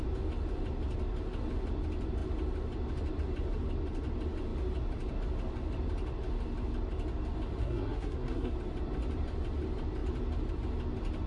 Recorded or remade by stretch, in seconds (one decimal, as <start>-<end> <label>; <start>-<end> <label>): 0.0-7.6 recorded; 7.6-8.5 remade; 8.5-11.3 recorded